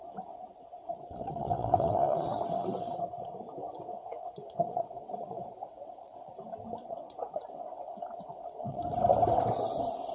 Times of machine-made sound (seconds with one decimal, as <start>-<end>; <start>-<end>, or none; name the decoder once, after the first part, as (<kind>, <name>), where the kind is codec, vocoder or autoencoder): 0.9-3.0 (vocoder, WaveNeXt); 3.7-6.3; 6.8-8.8